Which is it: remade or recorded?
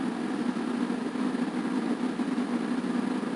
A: recorded